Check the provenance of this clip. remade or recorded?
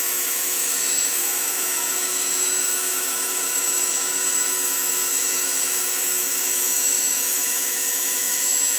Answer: remade